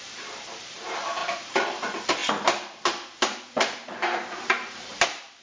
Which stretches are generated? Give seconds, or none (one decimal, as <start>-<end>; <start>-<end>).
0.0-2.2; 3.4-5.4